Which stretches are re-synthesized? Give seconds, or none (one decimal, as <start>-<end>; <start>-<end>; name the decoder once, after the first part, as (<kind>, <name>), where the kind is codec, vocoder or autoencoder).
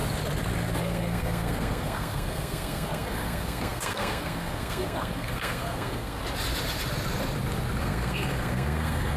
0.8-6.2 (codec, SNAC); 7.8-9.2